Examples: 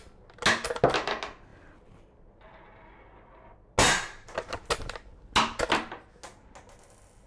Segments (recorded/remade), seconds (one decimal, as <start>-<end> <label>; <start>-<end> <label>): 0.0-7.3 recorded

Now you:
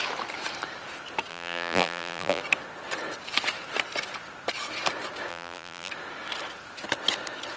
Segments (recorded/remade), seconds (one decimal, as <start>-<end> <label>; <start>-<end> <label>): 0.0-1.3 recorded; 1.3-2.4 remade; 2.4-5.3 recorded; 5.3-5.9 remade; 5.9-7.6 recorded

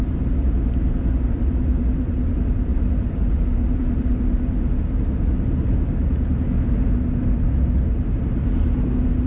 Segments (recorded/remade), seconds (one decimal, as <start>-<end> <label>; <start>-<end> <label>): 0.0-5.5 remade; 5.5-7.2 recorded; 7.2-9.3 remade

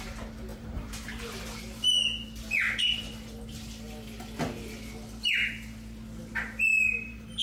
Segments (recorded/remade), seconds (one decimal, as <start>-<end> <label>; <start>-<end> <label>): 0.0-0.5 recorded; 0.5-1.2 remade; 1.2-6.7 recorded; 6.7-7.4 remade

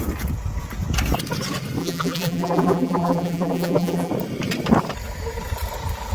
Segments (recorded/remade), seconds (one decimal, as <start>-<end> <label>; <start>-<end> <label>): 0.0-1.8 recorded; 1.8-4.1 remade; 4.1-6.1 recorded